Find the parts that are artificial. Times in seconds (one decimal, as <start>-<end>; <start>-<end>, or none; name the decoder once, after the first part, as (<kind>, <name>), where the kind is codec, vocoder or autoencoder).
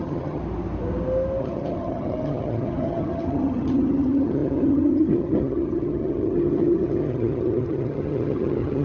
0.0-0.4 (vocoder, HiFi-GAN); 1.4-8.8